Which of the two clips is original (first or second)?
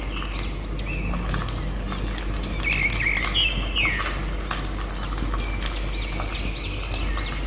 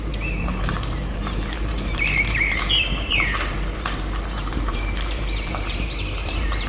first